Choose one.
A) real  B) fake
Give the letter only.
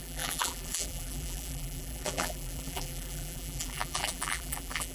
B